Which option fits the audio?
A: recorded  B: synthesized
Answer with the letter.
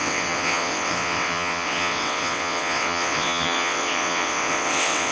B